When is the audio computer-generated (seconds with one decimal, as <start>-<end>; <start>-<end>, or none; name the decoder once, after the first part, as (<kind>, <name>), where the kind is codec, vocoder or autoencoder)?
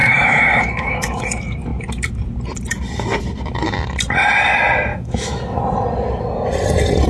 0.0-1.2 (autoencoder, DAC-VAE); 4.9-5.6